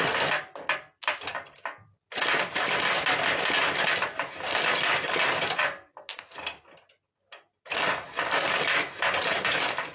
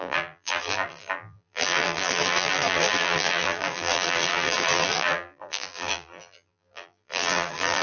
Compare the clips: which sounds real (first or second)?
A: first